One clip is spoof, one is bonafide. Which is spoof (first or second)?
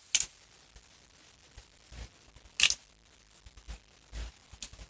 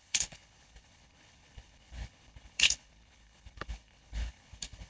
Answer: second